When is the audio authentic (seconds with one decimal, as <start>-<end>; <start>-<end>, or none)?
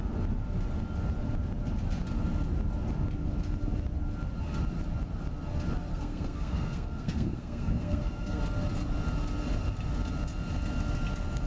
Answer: 0.0-5.9; 8.4-11.5